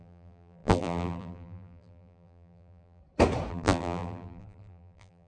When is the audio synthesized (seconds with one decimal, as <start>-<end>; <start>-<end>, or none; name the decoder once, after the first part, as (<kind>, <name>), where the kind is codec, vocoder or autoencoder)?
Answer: 0.0-3.0 (vocoder, BigVGAN v2); 3.5-5.3